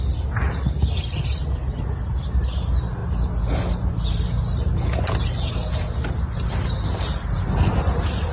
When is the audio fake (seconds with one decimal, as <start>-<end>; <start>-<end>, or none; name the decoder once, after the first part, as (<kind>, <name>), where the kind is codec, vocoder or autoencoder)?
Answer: none